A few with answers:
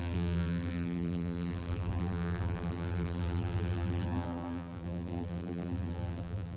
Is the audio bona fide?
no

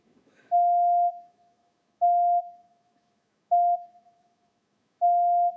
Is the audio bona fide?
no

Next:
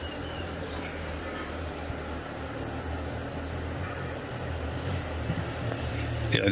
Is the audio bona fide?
yes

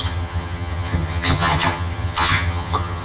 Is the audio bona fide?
no